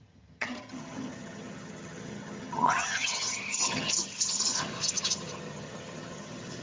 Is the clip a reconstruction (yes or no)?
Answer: yes